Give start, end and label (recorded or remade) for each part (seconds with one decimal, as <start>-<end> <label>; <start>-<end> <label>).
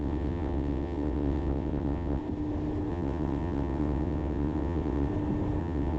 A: 0.0-2.2 remade; 2.2-2.9 recorded; 2.9-5.1 remade; 5.1-5.6 recorded; 5.6-6.0 remade